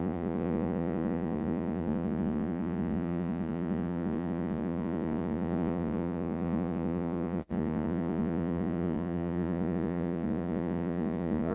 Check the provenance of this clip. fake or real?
fake